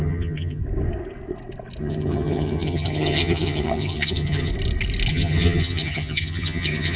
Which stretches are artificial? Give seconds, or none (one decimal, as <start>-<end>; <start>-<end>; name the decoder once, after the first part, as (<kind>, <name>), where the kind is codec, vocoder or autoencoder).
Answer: 0.0-0.6 (vocoder, HiFi-GAN); 1.8-4.5; 5.1-7.0